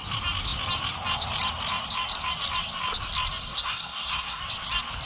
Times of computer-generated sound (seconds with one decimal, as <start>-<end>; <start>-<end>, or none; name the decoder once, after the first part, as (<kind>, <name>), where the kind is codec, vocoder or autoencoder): 3.4-4.4 (codec, SNAC)